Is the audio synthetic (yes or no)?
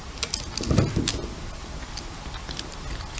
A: no